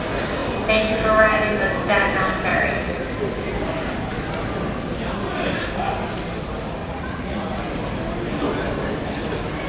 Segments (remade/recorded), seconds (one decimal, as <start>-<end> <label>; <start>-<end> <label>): 0.0-2.5 recorded; 2.5-3.0 remade; 3.0-6.8 recorded; 6.8-7.6 remade; 7.6-9.7 recorded